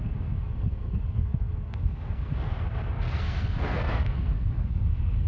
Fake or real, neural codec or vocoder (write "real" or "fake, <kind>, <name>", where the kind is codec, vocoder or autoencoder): fake, codec, SNAC